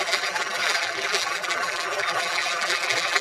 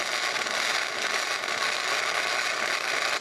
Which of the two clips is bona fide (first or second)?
second